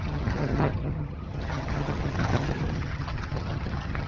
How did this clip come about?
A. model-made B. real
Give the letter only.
A